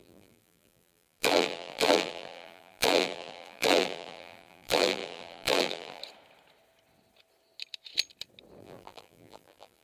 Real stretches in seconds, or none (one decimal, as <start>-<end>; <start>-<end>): 6.0-8.6